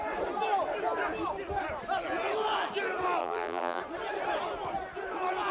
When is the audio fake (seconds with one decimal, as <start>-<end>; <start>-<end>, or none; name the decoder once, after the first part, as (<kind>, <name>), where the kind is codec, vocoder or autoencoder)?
3.2-3.8 (vocoder, BigVGAN v2)